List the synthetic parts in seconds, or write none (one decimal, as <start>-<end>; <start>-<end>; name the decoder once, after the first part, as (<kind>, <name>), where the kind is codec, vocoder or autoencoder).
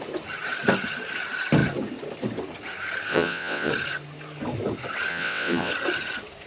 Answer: 3.1-3.7 (vocoder, WaveNeXt); 5.1-5.7